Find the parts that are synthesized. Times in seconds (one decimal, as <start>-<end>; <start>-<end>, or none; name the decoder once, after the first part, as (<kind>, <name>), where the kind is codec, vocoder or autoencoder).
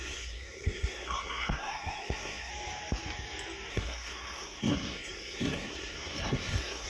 0.0-2.5 (codec, SNAC); 3.7-6.9